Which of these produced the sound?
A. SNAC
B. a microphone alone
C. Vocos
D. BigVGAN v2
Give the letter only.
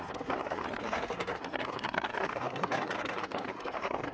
A